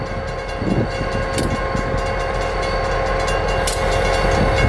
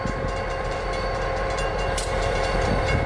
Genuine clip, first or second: first